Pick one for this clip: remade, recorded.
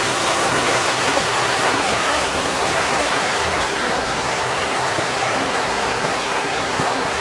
remade